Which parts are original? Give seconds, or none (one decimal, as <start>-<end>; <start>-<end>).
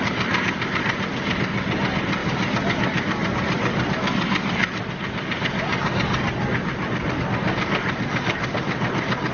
0.0-9.3